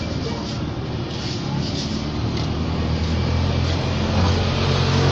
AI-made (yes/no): no